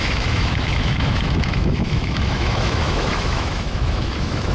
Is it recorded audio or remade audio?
remade